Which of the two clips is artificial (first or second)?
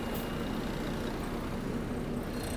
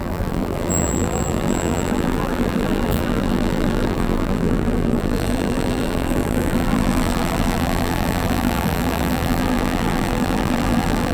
second